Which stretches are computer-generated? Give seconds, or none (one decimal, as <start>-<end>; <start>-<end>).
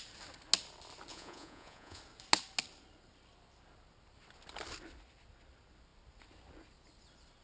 1.1-2.0